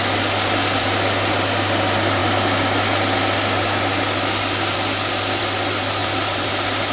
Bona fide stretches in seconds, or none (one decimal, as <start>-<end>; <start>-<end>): 0.0-6.0; 6.5-6.9